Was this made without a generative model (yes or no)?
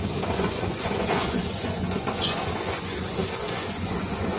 no